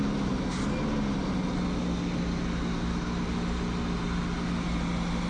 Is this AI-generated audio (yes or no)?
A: no